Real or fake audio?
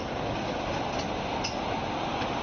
real